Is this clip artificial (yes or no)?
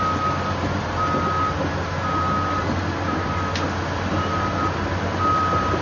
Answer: no